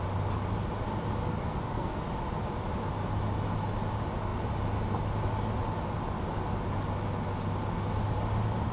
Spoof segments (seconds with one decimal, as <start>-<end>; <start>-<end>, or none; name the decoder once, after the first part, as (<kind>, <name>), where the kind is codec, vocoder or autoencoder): 1.3-2.0 (codec, SNAC)